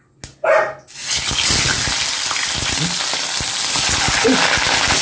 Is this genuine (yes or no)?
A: yes